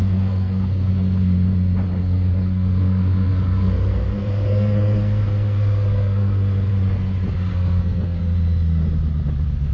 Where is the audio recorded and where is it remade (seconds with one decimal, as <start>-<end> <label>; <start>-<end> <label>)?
0.0-0.9 remade; 0.9-2.0 recorded; 2.0-6.7 remade; 6.7-7.5 recorded; 7.5-8.2 remade; 8.2-9.7 recorded